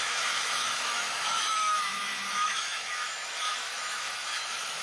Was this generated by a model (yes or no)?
yes